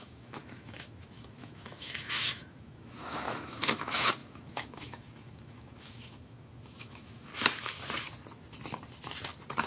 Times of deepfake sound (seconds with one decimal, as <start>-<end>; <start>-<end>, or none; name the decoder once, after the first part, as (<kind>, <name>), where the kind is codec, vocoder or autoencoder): 0.0-7.3 (autoencoder, DAC-VAE)